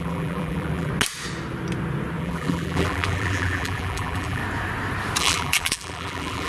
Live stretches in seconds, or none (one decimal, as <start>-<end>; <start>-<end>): 0.9-2.2; 4.4-5.2